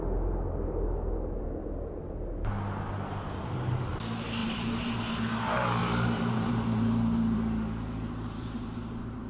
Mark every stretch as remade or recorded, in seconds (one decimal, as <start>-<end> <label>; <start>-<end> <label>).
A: 0.0-4.4 recorded; 4.4-5.0 remade; 5.0-5.8 recorded; 5.8-9.3 remade